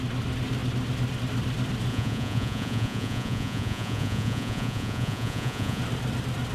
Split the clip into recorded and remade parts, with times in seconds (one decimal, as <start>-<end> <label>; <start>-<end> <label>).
0.0-1.9 recorded; 1.9-5.8 remade; 5.8-6.5 recorded